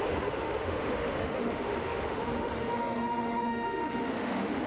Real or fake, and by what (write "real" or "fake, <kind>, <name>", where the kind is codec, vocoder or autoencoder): fake, autoencoder, DAC-VAE